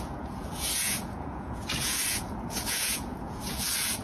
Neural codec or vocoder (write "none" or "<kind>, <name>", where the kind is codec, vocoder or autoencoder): vocoder, Vocos